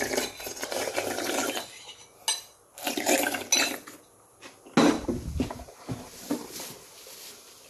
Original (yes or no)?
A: yes